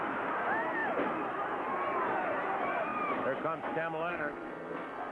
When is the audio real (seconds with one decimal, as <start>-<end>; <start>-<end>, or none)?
0.0-4.1